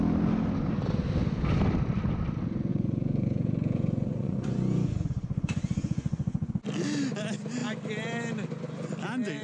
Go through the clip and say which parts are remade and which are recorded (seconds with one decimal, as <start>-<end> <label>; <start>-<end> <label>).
0.0-2.7 recorded; 2.7-6.5 remade; 6.5-9.4 recorded